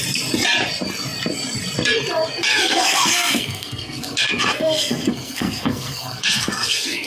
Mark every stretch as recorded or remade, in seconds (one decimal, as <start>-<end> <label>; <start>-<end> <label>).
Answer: 0.0-2.5 recorded; 2.5-7.1 remade